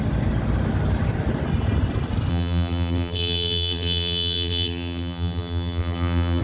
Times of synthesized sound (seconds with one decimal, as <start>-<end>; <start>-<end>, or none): 2.3-6.4